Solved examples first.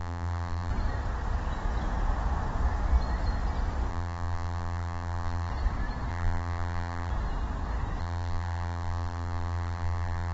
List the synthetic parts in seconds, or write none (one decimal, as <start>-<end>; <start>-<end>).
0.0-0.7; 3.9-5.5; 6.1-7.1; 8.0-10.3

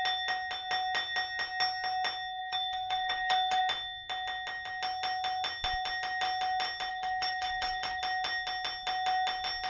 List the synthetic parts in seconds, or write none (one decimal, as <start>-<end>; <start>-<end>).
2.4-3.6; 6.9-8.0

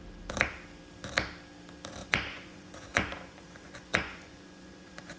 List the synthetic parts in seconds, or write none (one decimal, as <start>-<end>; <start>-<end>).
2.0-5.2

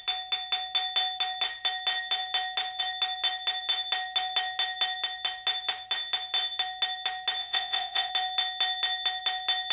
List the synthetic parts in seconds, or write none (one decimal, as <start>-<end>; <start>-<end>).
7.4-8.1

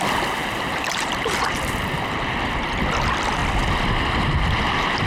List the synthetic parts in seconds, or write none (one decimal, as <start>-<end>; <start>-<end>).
0.4-2.8